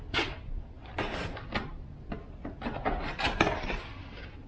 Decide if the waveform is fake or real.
real